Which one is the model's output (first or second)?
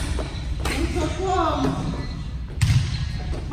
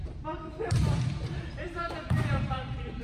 second